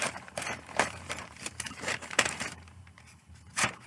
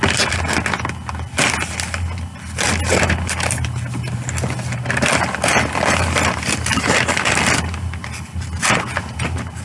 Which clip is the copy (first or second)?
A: first